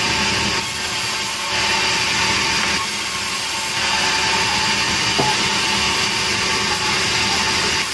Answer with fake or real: real